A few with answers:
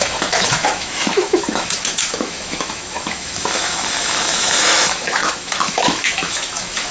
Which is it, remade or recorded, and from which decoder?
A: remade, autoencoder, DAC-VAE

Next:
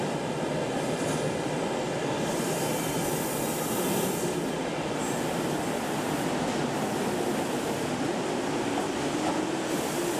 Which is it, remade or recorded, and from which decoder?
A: recorded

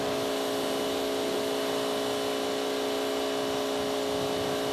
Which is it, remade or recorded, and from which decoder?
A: recorded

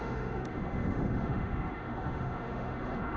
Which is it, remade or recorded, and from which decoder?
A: remade, autoencoder, DAC-VAE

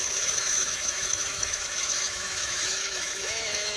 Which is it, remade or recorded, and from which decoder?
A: remade, autoencoder, DAC-VAE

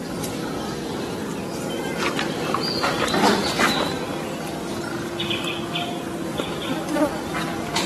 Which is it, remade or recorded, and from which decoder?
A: recorded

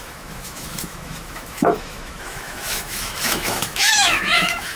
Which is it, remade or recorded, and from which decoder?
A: remade, autoencoder, DAC-VAE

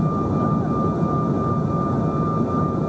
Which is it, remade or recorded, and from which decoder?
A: recorded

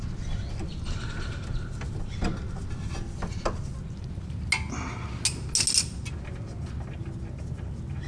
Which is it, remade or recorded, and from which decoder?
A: recorded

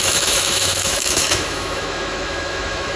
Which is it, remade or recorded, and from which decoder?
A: remade, autoencoder, DAC-VAE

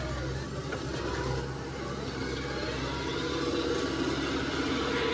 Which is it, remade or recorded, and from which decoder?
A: recorded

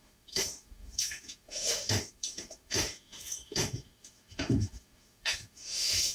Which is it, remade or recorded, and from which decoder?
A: remade, autoencoder, DAC-VAE